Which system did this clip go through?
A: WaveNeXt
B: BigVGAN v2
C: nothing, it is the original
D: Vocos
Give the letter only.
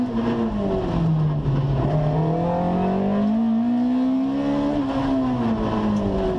C